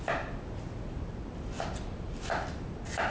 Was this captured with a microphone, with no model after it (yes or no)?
yes